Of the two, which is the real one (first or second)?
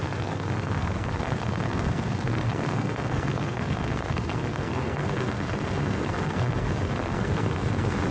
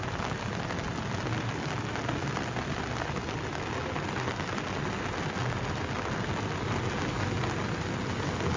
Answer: second